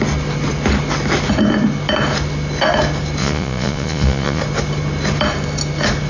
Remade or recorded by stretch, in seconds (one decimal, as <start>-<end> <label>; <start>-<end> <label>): 0.0-3.2 recorded; 3.2-4.4 remade; 4.4-6.1 recorded